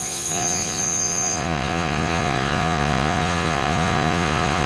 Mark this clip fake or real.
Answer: fake